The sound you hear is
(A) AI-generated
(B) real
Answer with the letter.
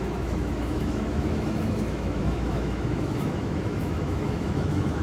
A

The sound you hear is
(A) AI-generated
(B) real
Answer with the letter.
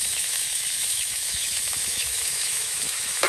A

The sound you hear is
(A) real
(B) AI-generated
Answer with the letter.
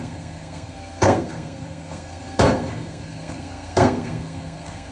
B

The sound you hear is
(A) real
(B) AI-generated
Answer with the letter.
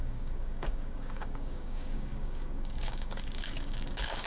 B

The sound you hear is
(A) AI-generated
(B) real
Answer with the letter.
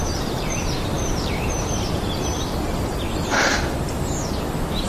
A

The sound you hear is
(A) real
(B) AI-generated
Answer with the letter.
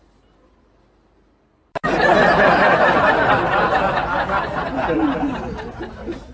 A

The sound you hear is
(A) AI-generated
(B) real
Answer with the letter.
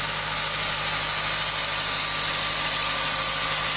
B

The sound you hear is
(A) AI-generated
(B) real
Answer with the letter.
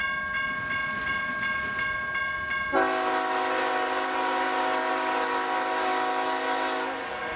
B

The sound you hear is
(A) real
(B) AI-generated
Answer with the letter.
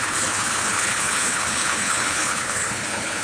B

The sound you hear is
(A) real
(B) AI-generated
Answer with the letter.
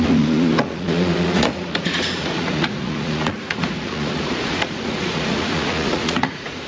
B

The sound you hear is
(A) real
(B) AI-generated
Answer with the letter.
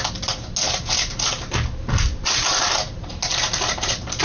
A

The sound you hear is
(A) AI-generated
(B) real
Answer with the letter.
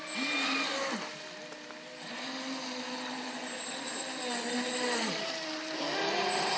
B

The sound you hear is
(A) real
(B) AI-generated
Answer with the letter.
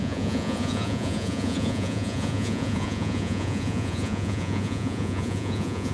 B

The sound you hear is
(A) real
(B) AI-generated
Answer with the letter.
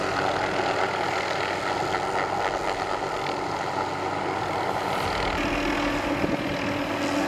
A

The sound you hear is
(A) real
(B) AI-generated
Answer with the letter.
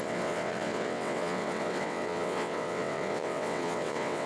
B